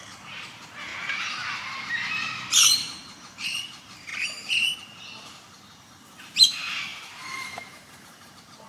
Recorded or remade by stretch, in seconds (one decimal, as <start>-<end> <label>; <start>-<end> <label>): 0.0-0.9 remade; 0.9-2.5 recorded; 2.5-4.1 remade; 4.1-6.2 recorded; 6.2-8.7 remade